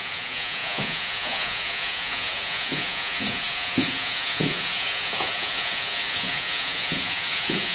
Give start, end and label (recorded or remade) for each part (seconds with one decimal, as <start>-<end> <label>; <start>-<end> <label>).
0.0-7.7 remade